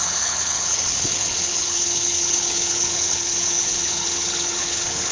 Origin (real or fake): fake